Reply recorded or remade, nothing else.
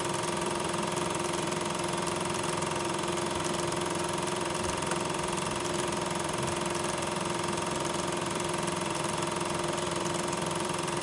remade